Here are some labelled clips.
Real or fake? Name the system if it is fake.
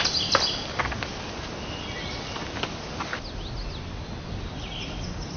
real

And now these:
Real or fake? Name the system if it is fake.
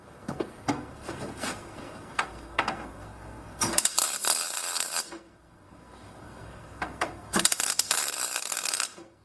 fake, codec, SNAC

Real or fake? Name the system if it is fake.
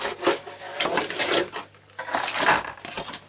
real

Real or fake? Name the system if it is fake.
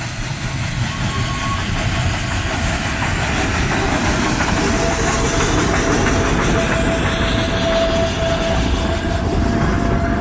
real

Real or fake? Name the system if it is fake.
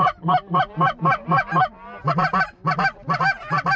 real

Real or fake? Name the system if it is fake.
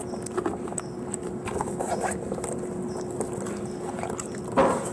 real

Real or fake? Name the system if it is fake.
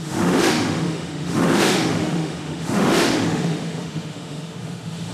fake, autoencoder, DAC-VAE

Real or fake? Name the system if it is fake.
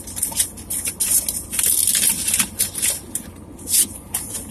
real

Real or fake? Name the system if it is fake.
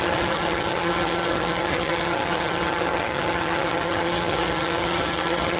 fake, vocoder, HiFi-GAN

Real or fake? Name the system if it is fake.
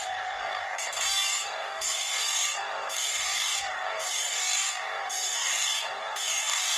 fake, codec, DAC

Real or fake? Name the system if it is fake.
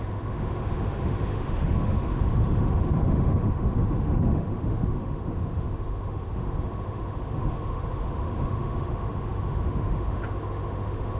fake, autoencoder, DAC-VAE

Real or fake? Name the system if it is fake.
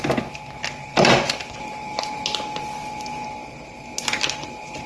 real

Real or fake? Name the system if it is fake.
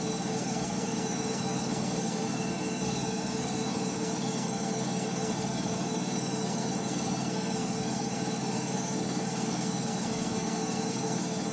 fake, codec, SNAC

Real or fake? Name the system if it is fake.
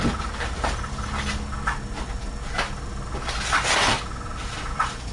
real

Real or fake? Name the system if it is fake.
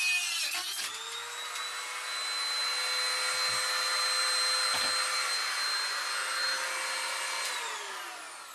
real